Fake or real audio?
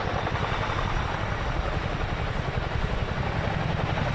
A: real